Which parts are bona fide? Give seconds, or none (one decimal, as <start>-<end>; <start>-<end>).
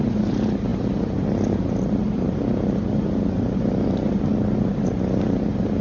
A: 0.0-5.8